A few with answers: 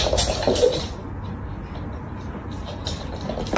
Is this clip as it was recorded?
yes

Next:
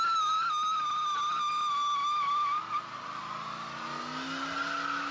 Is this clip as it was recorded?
yes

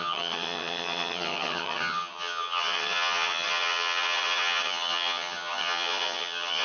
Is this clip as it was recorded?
no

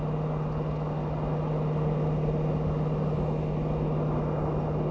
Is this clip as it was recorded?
yes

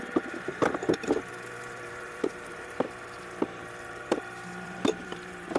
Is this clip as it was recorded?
no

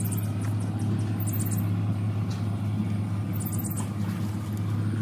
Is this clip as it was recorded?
yes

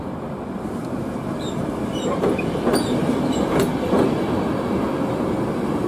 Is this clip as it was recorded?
yes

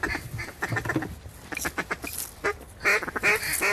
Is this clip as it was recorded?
yes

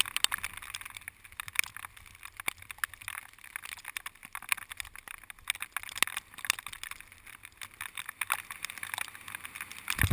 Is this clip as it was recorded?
yes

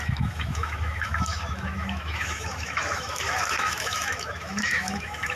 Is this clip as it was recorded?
no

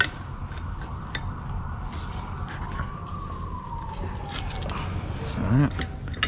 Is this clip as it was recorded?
yes